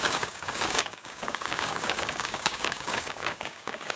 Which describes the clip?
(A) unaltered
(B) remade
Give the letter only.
B